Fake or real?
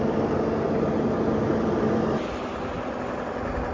real